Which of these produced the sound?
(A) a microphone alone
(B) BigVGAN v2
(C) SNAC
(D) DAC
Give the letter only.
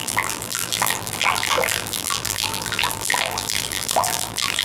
B